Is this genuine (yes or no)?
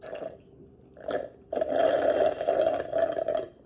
yes